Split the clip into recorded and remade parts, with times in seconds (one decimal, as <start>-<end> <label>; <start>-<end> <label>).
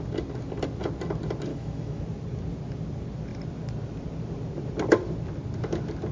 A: 0.0-1.5 recorded; 1.5-2.0 remade; 2.0-6.1 recorded